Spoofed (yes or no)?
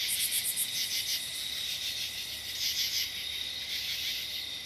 no